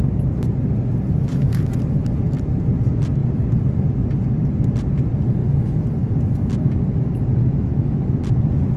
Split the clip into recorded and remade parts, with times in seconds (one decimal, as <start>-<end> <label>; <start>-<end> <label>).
0.0-1.3 recorded; 1.3-1.8 remade; 1.8-7.4 recorded; 7.4-8.0 remade; 8.0-8.8 recorded

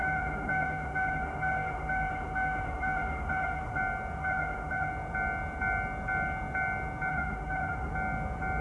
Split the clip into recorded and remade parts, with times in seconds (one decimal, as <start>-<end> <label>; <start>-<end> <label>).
0.0-3.8 remade; 3.8-4.2 recorded; 4.2-4.9 remade; 4.9-7.1 recorded; 7.1-7.9 remade; 7.9-8.6 recorded